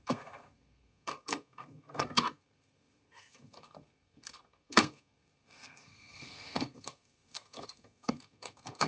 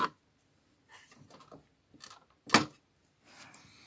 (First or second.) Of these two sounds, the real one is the second